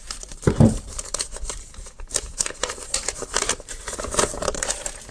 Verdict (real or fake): fake